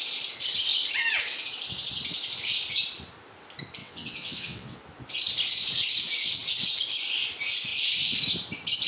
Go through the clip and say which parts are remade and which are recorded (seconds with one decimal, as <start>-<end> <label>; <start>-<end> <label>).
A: 0.0-3.8 recorded; 3.8-4.8 remade; 4.8-8.9 recorded